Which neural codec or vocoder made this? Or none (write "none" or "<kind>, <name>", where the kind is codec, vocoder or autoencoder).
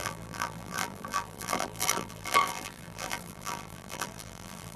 vocoder, BigVGAN v2